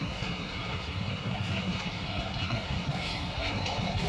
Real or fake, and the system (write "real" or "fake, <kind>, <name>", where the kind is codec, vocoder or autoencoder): fake, codec, SNAC